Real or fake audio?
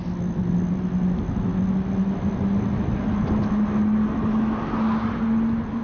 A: real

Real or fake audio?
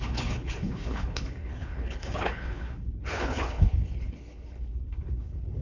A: fake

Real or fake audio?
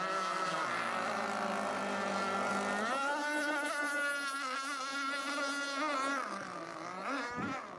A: real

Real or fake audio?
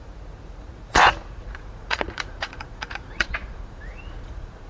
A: fake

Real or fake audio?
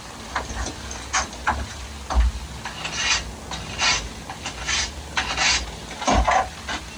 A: real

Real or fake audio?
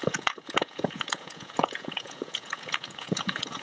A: fake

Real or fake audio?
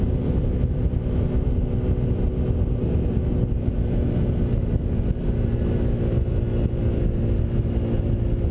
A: real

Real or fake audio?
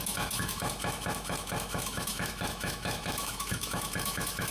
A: fake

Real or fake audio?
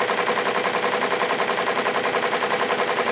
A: real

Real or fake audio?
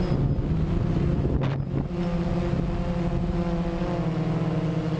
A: real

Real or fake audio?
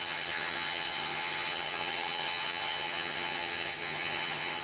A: fake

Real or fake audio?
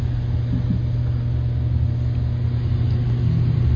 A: real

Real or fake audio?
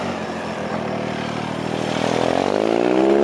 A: real